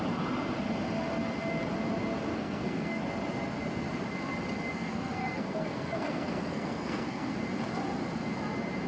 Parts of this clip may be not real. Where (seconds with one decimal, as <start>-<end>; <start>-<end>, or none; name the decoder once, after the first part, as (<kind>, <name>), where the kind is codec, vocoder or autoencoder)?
2.3-3.0 (codec, SNAC); 4.7-7.3